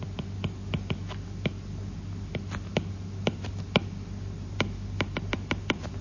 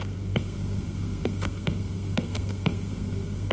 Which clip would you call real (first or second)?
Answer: first